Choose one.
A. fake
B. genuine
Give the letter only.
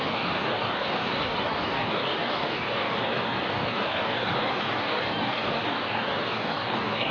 A